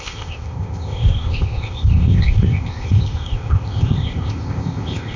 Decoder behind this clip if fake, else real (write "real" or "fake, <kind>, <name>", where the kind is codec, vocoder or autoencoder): fake, codec, ZipCodec